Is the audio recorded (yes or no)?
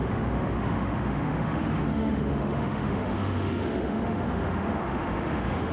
no